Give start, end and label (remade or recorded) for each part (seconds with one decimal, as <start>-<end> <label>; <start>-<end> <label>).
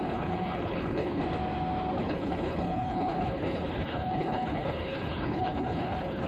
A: 0.0-1.2 remade; 1.2-2.0 recorded; 2.0-6.3 remade